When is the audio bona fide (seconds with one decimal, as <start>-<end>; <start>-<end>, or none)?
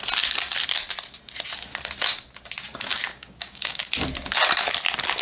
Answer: 0.0-2.9; 3.8-5.2